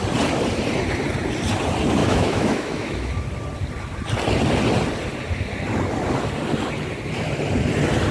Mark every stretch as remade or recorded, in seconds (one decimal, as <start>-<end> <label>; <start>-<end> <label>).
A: 0.0-2.0 recorded; 2.0-3.1 remade; 3.1-8.1 recorded